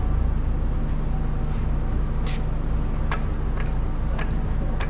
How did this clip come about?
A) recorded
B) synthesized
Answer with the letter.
A